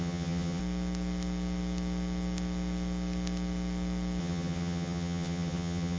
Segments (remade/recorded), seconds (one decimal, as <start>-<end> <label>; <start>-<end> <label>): 0.0-0.6 remade; 0.6-4.2 recorded; 4.2-6.0 remade